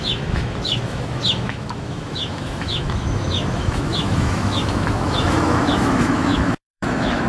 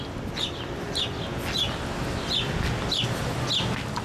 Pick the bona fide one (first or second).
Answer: second